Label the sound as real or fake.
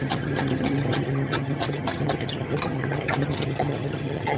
fake